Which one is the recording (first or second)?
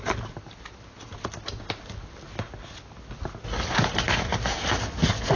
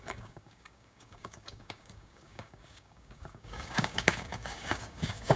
first